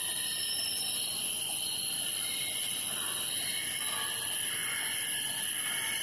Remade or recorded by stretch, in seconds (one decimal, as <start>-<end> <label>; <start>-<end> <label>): 0.0-1.1 recorded; 1.1-2.1 remade; 2.1-4.6 recorded; 4.6-5.4 remade; 5.4-6.0 recorded